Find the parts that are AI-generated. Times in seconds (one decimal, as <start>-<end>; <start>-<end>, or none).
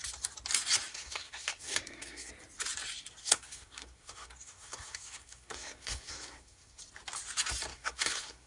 0.9-2.3; 3.2-6.8; 7.7-8.5